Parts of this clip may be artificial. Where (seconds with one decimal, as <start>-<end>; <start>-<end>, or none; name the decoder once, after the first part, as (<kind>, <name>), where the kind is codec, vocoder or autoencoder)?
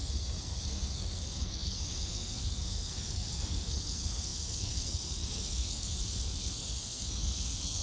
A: 0.0-7.8 (codec, SNAC)